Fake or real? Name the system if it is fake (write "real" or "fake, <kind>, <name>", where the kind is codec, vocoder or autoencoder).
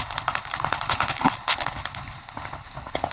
fake, codec, HILCodec